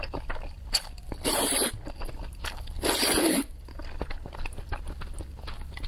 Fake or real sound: real